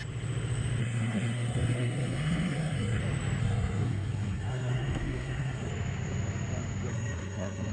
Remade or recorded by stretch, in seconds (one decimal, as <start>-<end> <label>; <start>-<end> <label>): 0.0-0.8 recorded; 0.8-3.0 remade; 3.0-3.4 recorded; 3.4-5.7 remade; 5.7-6.9 recorded; 6.9-7.7 remade